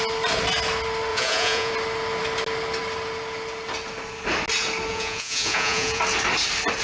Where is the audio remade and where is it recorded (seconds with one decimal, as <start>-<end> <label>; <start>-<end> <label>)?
0.0-1.1 recorded; 1.1-1.7 remade; 1.7-4.9 recorded; 4.9-6.0 remade; 6.0-6.8 recorded